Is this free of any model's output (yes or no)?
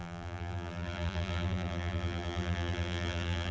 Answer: no